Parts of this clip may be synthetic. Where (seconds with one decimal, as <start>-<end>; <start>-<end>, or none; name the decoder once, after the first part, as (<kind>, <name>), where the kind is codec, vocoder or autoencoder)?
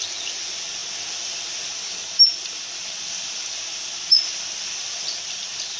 none